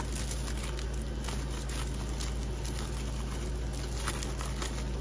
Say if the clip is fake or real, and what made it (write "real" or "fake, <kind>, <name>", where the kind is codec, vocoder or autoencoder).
real